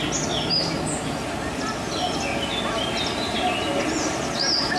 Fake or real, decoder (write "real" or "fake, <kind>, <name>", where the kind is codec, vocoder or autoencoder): real